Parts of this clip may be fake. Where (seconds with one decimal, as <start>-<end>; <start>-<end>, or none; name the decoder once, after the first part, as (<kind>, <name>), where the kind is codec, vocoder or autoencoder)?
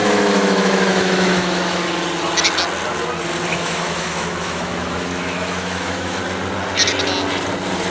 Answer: 0.0-1.8 (autoencoder, DAC-VAE); 3.5-6.2